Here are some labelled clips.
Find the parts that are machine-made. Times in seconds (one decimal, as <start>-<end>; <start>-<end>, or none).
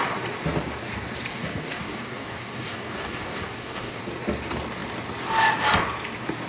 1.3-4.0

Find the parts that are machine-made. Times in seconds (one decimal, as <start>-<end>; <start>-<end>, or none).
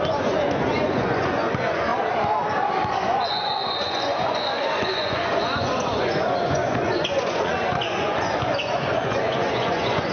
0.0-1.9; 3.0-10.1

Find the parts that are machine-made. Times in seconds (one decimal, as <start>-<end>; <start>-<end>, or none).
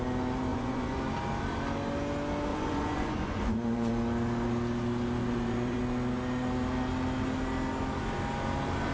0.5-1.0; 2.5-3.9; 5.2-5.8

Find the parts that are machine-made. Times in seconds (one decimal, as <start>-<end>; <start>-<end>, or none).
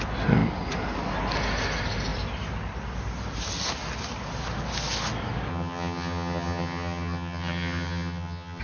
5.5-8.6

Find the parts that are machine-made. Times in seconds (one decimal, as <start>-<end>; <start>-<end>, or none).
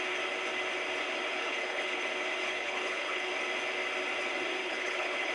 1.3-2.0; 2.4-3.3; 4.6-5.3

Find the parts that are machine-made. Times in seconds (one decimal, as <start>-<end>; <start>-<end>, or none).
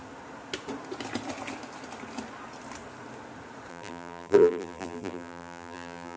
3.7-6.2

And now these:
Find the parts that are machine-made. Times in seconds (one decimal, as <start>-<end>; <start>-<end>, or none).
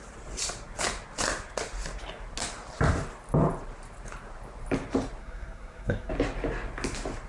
5.2-6.1